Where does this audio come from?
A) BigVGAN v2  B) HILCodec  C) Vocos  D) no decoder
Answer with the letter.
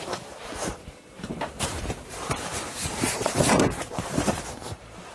A